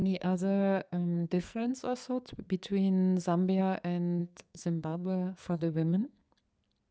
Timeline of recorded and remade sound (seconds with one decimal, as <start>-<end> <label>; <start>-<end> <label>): 0.0-1.7 remade; 1.7-4.2 recorded; 4.2-6.3 remade; 6.3-6.9 recorded